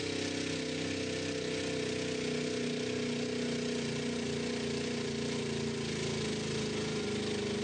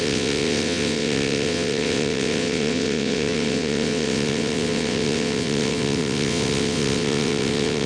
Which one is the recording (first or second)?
first